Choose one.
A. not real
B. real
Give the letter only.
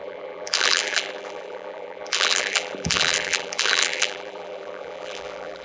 A